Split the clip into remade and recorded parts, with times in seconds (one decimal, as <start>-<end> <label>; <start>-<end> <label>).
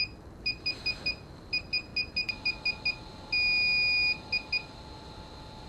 0.0-5.7 recorded